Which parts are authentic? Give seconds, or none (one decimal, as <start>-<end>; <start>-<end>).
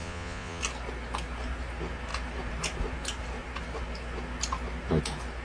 0.6-5.4